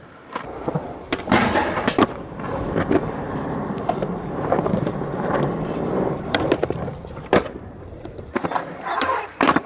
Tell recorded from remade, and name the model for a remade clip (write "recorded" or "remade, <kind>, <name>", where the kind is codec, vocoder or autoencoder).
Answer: remade, vocoder, BigVGAN v2